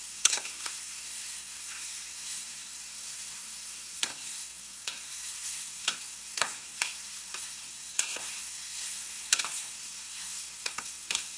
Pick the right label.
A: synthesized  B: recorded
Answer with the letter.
A